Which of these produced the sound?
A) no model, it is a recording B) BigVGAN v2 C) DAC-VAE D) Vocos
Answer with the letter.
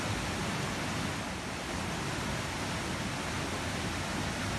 A